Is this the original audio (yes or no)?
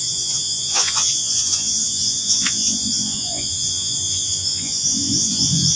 no